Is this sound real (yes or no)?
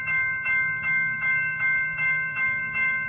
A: no